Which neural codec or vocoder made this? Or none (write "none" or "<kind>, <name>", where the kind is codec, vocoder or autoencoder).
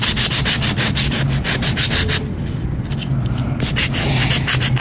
none